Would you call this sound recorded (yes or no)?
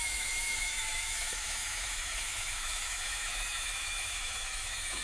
no